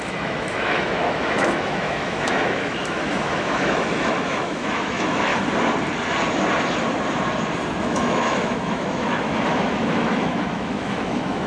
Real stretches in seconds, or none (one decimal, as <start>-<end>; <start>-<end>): 5.3-7.8